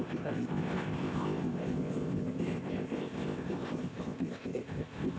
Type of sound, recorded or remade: remade